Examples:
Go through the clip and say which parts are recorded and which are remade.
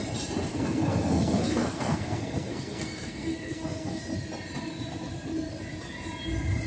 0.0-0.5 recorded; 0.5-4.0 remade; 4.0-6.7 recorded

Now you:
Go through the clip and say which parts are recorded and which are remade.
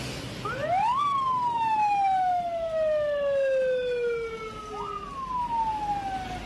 0.0-6.5 recorded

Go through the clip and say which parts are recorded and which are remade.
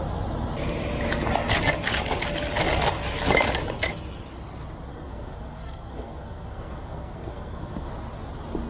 0.0-4.9 recorded; 4.9-7.9 remade; 7.9-8.7 recorded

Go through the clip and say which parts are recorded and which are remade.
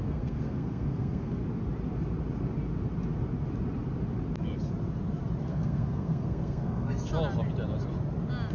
0.0-1.4 remade; 1.4-5.4 recorded; 5.4-7.1 remade; 7.1-8.5 recorded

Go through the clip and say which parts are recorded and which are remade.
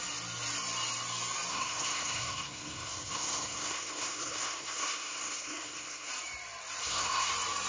0.0-1.5 recorded; 1.5-6.1 remade; 6.1-6.8 recorded; 6.8-7.3 remade; 7.3-7.7 recorded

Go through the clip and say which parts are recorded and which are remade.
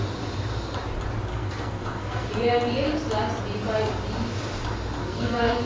0.0-1.3 recorded; 1.3-2.3 remade; 2.3-5.0 recorded; 5.0-5.7 remade